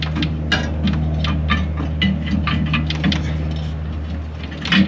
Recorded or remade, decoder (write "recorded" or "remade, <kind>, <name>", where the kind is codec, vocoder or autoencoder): recorded